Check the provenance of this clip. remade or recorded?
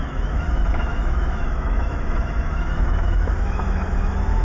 remade